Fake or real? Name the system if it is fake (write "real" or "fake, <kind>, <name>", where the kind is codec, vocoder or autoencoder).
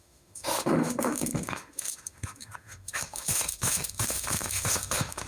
fake, autoencoder, DAC-VAE